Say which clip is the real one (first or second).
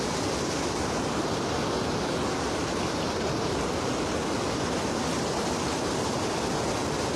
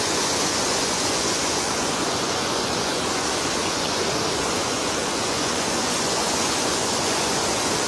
first